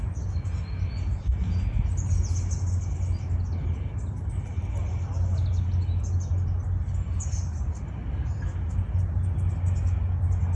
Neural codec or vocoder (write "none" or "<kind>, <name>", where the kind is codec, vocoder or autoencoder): none